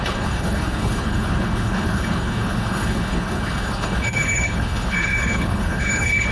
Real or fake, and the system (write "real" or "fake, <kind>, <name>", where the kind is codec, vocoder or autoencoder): fake, codec, HILCodec